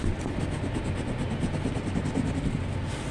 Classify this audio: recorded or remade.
recorded